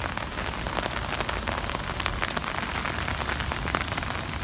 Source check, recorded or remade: recorded